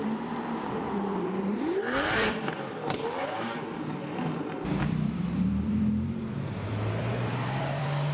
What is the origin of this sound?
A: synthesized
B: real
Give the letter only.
A